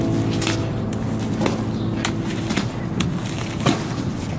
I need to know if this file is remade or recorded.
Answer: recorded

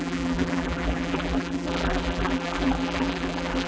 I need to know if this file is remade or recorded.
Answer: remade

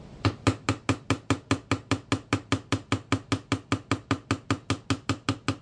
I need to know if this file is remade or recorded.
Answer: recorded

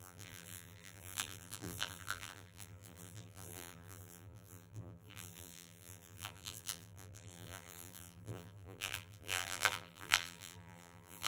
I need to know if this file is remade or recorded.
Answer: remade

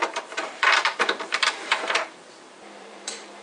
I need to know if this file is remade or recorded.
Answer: remade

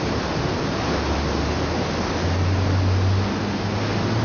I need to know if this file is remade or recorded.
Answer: recorded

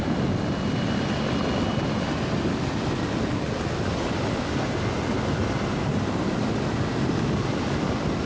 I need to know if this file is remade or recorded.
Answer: recorded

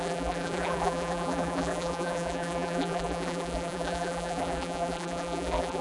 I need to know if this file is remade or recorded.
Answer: remade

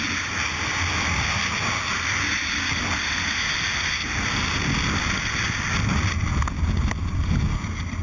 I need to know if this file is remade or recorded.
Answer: recorded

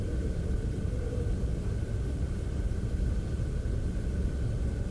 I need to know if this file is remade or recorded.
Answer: recorded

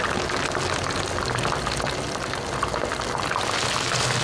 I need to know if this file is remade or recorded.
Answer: recorded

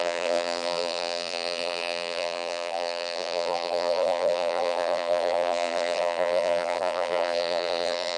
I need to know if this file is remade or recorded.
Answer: remade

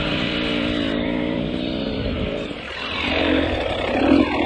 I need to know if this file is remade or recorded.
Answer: remade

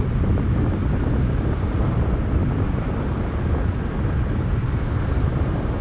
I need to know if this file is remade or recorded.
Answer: recorded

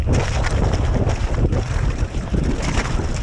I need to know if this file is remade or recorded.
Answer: recorded